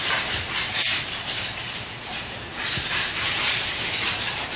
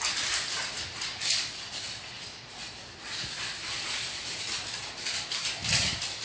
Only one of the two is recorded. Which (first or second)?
second